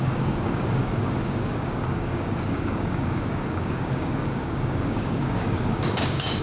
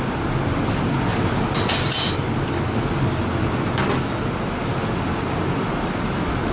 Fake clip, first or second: first